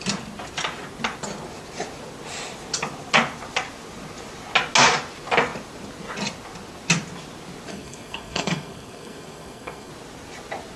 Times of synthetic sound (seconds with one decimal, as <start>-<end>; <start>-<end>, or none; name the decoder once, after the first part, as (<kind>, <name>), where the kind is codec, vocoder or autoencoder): 7.7-9.9 (codec, SNAC)